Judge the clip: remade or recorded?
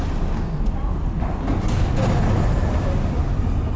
recorded